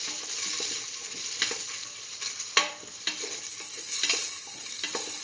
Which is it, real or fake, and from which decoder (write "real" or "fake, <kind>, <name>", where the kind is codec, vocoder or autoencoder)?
fake, vocoder, BigVGAN v2